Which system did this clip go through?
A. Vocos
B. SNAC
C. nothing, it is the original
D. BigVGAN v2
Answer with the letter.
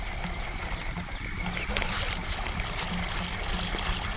C